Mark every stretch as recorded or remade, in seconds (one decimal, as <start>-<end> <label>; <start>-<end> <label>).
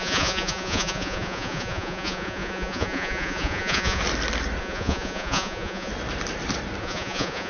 0.0-4.0 remade; 4.0-4.6 recorded; 4.6-5.9 remade; 5.9-6.8 recorded; 6.8-7.5 remade